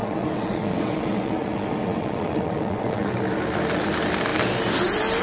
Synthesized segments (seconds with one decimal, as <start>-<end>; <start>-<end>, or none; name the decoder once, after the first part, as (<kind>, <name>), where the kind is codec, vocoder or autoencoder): 0.0-3.1 (vocoder, WaveNeXt)